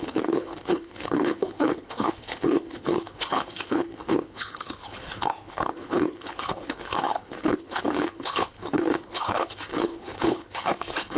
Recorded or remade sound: remade